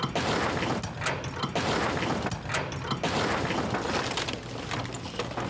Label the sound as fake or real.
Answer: real